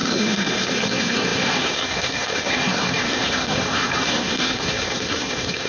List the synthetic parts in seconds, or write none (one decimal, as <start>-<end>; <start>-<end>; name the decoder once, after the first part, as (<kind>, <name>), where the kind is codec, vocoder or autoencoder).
0.0-5.7 (codec, SNAC)